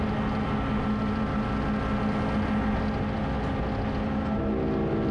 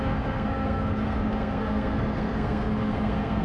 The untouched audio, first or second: first